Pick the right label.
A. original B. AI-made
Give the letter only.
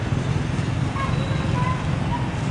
A